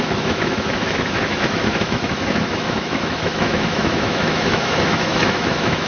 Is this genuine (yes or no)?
no